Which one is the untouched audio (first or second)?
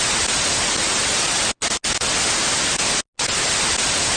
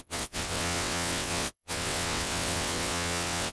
first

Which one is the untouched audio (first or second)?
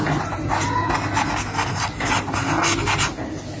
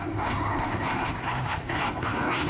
first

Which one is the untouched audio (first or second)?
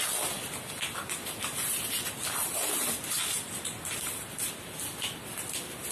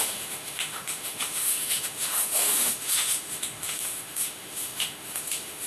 first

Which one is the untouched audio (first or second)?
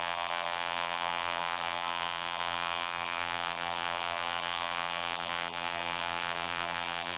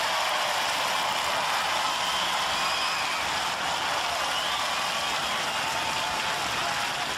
second